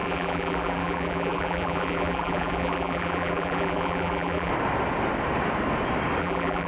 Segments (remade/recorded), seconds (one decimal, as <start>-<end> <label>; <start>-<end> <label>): 0.0-4.5 remade; 4.5-6.2 recorded; 6.2-6.7 remade